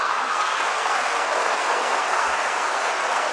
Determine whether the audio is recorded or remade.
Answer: remade